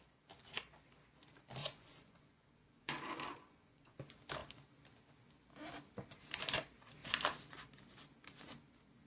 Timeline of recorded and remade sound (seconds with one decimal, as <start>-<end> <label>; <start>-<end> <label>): 0.0-1.6 recorded; 1.6-2.9 remade; 2.9-3.3 recorded; 3.3-4.0 remade; 4.0-9.1 recorded